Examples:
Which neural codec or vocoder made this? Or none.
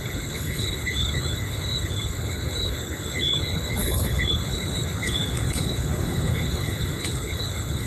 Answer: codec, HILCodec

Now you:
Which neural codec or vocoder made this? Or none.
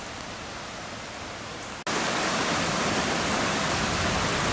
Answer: none